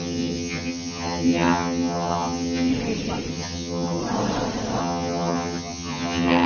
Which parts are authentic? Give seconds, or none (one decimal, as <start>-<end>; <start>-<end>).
2.7-3.3; 4.0-4.8